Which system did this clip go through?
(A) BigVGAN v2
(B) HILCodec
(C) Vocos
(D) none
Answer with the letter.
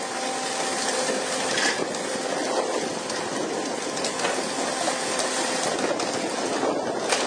D